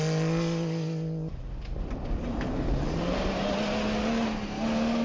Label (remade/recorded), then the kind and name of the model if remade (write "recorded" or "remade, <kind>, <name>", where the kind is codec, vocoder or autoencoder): recorded